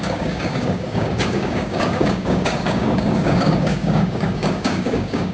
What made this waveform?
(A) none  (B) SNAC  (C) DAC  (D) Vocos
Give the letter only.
C